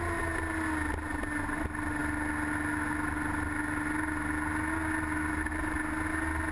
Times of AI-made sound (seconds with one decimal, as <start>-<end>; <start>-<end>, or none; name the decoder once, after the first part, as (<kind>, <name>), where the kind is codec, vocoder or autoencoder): none